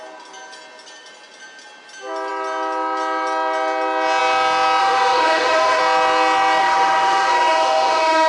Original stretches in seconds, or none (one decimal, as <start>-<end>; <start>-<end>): 0.0-4.8; 5.8-6.6